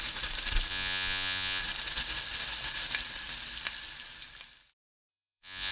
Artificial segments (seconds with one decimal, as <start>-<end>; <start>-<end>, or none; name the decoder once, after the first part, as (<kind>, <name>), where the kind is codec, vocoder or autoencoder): 0.7-1.6 (vocoder, Vocos); 5.1-5.7